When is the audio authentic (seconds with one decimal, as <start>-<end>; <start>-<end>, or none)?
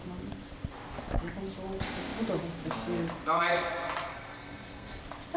0.0-4.1; 5.0-5.4